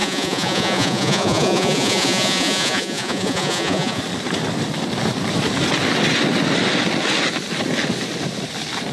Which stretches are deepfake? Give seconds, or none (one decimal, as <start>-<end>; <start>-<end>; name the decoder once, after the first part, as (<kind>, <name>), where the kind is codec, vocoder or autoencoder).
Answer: 0.0-4.0 (vocoder, Vocos)